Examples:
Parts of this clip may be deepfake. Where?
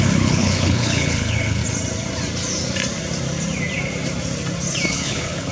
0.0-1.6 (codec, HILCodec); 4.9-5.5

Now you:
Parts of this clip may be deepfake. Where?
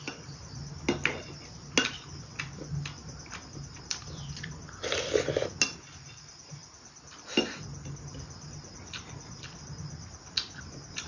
none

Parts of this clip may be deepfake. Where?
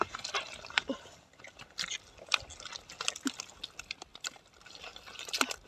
none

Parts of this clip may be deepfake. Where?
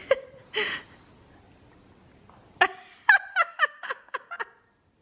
3.3-4.3 (autoencoder, DAC-VAE)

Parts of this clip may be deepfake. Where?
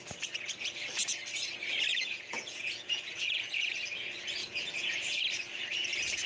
1.9-3.8 (vocoder, Vocos); 4.4-5.2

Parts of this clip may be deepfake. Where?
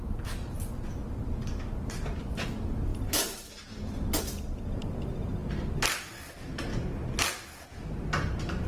none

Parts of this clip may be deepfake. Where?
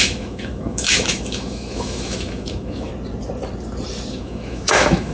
0.0-2.9 (autoencoder, DAC-VAE); 4.1-5.1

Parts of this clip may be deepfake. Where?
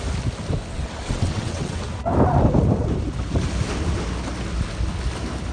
0.7-1.8 (vocoder, WaveNeXt)